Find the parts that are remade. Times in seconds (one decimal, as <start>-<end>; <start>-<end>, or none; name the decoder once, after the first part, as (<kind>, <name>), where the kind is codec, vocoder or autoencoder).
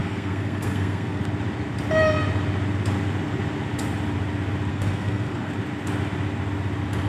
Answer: 0.0-1.2 (codec, SNAC); 4.7-5.5